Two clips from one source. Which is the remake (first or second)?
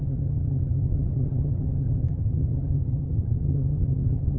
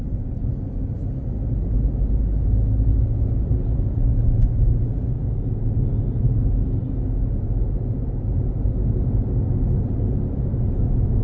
first